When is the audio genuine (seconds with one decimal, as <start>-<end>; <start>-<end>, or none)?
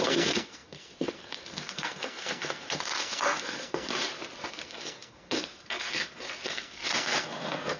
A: 3.9-4.5